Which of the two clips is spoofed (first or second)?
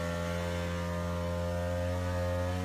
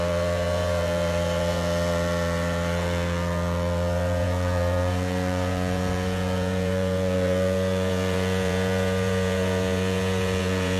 second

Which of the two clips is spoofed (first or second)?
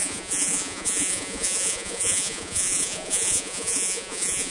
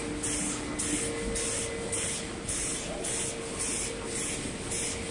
first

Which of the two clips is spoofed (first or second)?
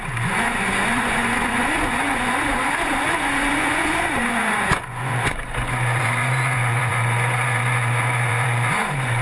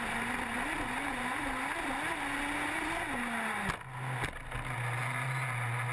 first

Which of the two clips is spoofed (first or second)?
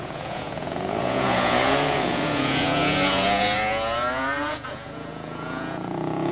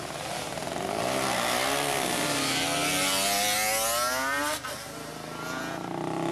first